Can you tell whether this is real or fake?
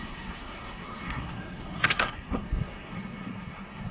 fake